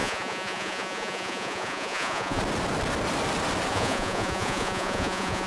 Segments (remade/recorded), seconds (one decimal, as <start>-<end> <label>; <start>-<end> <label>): 0.0-2.4 remade; 2.4-3.7 recorded; 3.7-5.5 remade